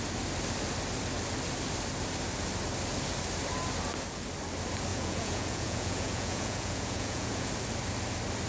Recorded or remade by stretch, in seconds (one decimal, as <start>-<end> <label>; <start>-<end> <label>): 0.0-4.9 recorded; 4.9-7.5 remade; 7.5-8.5 recorded